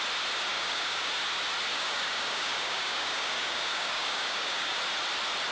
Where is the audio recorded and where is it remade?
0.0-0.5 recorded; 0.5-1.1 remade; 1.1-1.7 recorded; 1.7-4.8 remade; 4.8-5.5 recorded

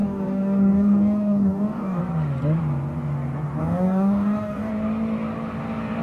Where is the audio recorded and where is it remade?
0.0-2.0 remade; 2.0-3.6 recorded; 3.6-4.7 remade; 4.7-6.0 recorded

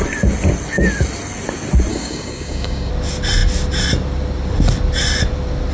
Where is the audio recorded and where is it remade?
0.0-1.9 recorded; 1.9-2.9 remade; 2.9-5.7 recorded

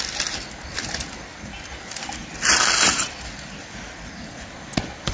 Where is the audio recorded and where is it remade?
0.0-5.1 recorded

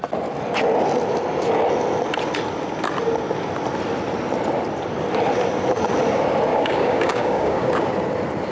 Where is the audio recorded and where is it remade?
0.0-6.5 recorded; 6.5-7.7 remade; 7.7-8.5 recorded

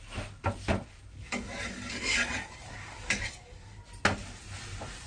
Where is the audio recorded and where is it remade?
0.0-1.1 recorded; 1.1-3.8 remade; 3.8-5.1 recorded

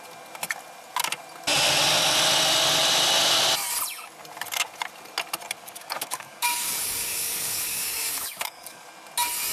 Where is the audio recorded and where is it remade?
0.0-5.6 recorded; 5.6-8.9 remade; 8.9-9.5 recorded